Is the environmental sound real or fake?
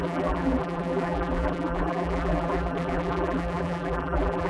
fake